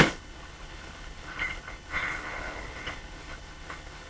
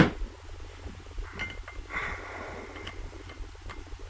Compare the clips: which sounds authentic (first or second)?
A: second